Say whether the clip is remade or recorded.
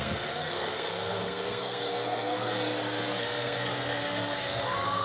remade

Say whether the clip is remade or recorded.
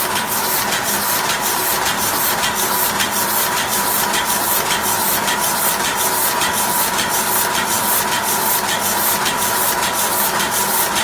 recorded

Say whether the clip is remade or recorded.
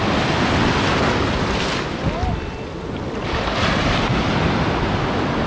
recorded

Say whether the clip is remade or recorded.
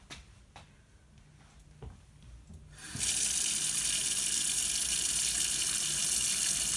recorded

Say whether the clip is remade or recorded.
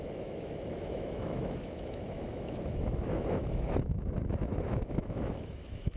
remade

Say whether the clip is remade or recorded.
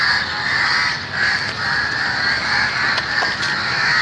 recorded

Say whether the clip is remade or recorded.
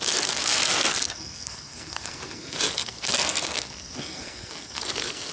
remade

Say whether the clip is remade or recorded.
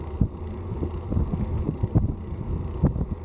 recorded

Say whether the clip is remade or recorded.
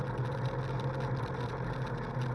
recorded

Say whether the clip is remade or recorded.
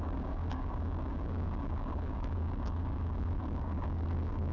remade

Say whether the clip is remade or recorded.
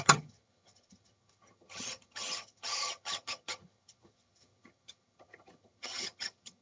remade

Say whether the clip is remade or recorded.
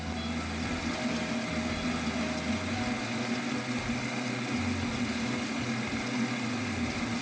recorded